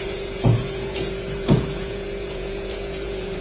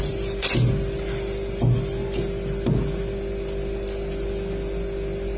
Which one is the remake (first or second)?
first